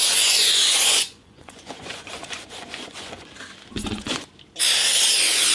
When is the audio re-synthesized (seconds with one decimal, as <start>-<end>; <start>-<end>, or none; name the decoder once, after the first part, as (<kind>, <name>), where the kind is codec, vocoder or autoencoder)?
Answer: 0.0-3.3 (vocoder, Vocos); 3.7-4.3